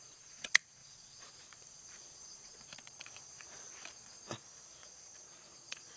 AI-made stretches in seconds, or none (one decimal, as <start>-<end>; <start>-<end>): 0.0-6.0